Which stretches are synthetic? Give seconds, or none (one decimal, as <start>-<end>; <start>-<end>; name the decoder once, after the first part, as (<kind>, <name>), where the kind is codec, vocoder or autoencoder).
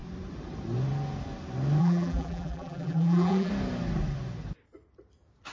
1.8-3.5 (vocoder, BigVGAN v2)